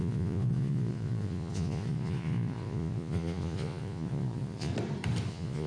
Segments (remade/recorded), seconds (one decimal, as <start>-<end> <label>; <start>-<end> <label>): 0.0-4.7 remade; 4.7-5.3 recorded; 5.3-5.7 remade